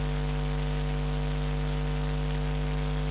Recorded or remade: recorded